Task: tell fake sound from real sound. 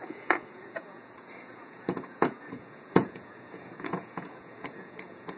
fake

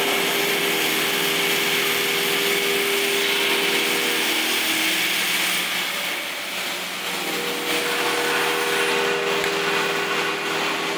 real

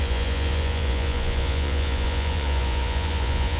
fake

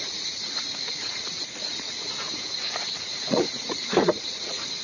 fake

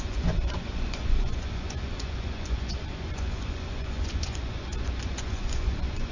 fake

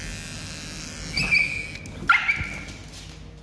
real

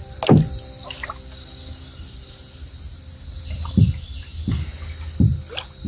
real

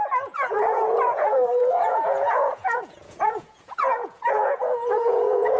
fake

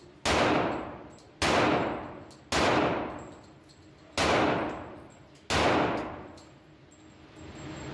real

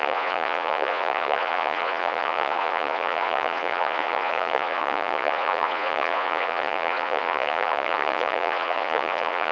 fake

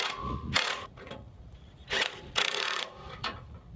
fake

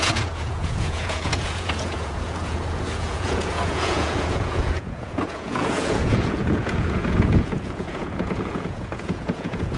fake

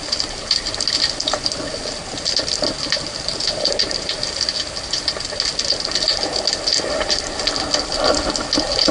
real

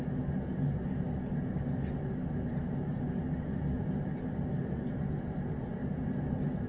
real